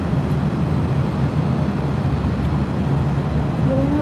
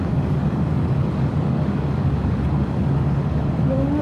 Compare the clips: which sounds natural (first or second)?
first